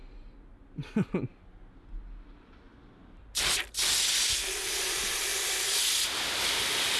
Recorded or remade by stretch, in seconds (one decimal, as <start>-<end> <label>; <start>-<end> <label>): 0.0-7.0 recorded